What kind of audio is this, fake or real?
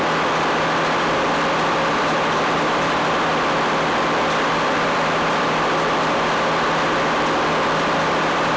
real